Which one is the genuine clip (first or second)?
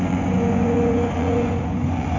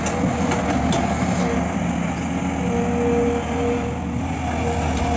second